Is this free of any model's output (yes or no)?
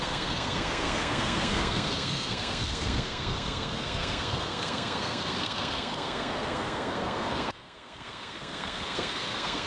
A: no